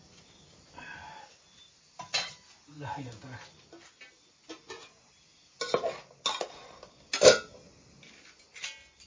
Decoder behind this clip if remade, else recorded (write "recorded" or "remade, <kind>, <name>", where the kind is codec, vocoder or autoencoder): recorded